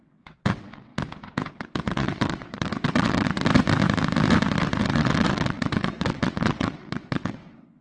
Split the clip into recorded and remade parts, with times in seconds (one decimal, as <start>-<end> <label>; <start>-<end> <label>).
0.0-0.9 remade; 0.9-1.5 recorded; 1.5-3.4 remade; 3.4-4.8 recorded; 4.8-7.8 remade